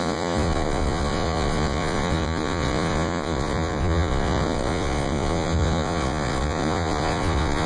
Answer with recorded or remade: remade